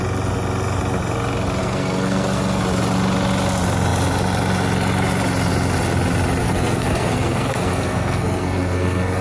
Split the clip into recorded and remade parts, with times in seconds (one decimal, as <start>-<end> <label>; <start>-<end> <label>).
0.0-1.6 recorded; 1.6-2.6 remade; 2.6-6.4 recorded; 6.4-9.2 remade